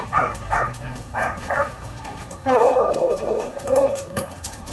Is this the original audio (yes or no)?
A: no